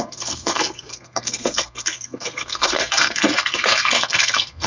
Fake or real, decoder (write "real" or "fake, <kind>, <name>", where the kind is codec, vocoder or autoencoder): fake, codec, SNAC